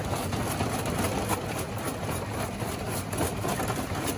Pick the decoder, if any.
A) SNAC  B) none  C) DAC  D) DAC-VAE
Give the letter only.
B